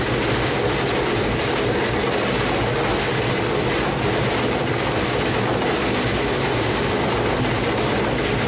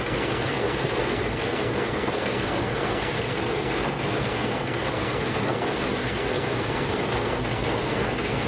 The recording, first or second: first